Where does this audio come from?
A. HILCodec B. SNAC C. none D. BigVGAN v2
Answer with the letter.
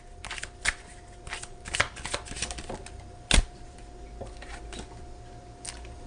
C